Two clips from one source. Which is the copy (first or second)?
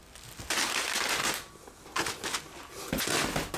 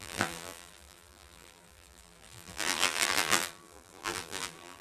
second